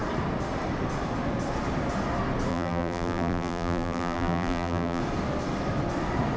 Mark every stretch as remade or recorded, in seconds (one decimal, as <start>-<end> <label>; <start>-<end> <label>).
0.0-2.5 recorded; 2.5-5.0 remade; 5.0-6.4 recorded